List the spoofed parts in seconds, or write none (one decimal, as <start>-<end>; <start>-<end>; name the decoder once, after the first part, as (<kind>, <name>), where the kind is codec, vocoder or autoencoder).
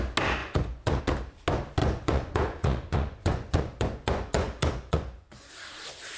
0.4-1.0 (vocoder, Vocos); 1.8-5.5